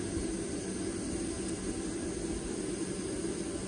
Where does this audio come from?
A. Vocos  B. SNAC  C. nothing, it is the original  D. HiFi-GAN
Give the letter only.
C